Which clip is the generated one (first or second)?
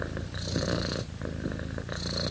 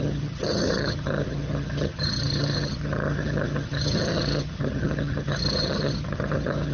second